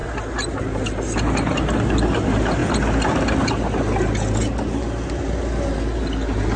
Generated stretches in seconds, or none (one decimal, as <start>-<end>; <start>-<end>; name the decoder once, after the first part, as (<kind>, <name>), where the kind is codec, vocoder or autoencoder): none

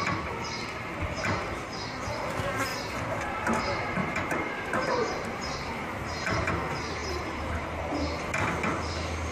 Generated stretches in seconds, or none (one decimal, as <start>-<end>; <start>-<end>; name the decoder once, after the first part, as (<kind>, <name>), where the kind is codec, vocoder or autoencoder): 2.7-3.6 (vocoder, BigVGAN v2); 4.0-6.5; 7.0-7.8

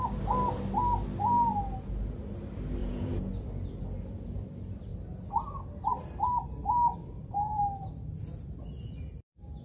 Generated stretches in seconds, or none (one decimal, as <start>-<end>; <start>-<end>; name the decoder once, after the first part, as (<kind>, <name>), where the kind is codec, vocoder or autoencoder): 2.8-3.3 (vocoder, Vocos)

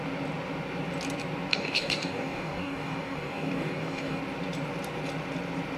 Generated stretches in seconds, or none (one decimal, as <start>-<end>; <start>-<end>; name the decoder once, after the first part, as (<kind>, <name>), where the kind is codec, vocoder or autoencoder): 1.5-4.2 (codec, DAC)

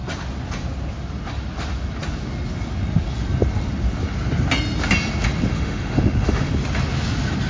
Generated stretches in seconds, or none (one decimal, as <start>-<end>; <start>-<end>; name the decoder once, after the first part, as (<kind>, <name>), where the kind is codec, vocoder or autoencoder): 5.5-6.5 (autoencoder, DAC-VAE)